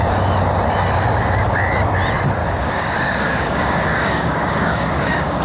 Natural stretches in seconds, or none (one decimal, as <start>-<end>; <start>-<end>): 0.0-2.4